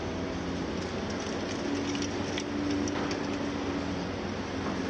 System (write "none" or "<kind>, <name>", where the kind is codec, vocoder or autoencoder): none